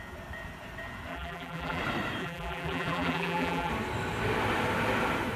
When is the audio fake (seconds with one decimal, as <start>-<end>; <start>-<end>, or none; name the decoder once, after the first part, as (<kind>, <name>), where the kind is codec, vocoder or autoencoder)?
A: 1.1-1.8 (vocoder, BigVGAN v2); 2.2-3.7